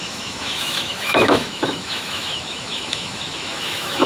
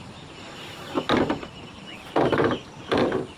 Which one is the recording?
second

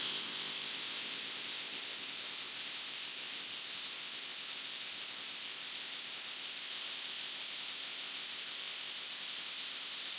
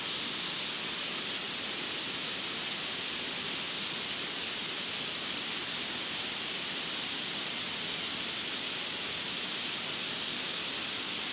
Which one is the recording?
second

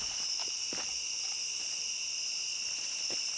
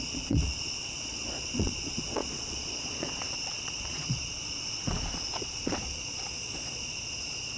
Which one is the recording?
first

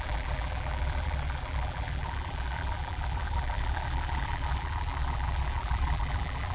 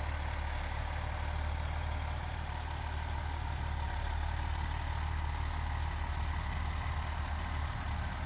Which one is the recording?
second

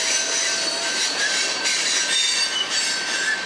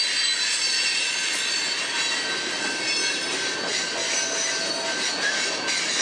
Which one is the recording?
second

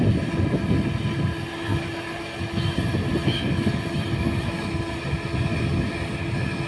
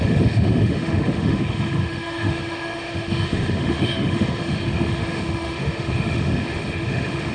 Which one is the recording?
first